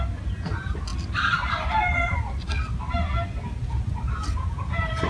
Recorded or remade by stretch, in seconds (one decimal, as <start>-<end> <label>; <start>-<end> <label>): 0.0-5.1 recorded